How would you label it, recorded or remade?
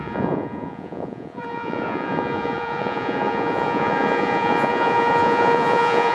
remade